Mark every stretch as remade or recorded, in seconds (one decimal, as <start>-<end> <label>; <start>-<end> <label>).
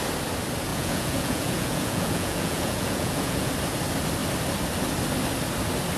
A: 0.0-0.7 recorded; 0.7-3.5 remade; 3.5-6.0 recorded